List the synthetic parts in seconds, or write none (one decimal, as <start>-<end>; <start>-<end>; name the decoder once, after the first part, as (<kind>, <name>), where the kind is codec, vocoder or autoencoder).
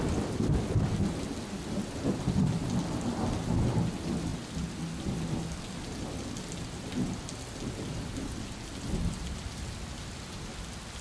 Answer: none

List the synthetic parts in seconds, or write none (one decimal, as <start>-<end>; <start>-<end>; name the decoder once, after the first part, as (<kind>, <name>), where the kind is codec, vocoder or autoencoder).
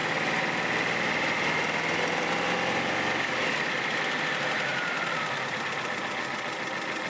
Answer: none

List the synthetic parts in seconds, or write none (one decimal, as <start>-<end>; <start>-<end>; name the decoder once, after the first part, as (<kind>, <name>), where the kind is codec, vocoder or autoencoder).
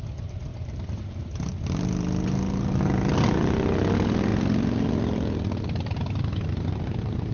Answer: none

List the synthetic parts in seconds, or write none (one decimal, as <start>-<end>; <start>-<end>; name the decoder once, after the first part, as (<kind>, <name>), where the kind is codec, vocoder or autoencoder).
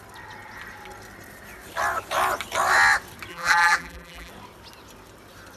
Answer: 3.3-4.3 (vocoder, BigVGAN v2)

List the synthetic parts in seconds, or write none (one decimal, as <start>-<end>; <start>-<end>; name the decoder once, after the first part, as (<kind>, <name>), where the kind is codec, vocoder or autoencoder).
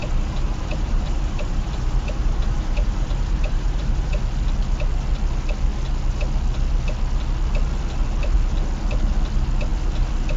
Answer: 0.0-4.2 (vocoder, BigVGAN v2)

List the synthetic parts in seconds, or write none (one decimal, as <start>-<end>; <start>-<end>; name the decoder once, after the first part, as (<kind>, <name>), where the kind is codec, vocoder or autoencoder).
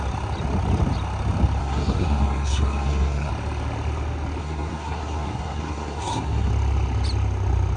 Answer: 1.6-3.3 (codec, SNAC); 4.4-6.5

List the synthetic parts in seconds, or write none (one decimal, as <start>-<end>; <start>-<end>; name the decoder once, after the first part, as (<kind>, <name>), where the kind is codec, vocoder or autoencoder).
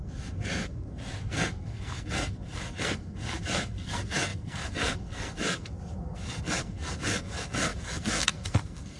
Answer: 0.0-9.0 (codec, SNAC)